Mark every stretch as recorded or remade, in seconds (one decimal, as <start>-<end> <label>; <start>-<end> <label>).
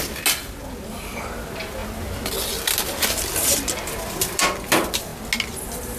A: 0.0-6.0 recorded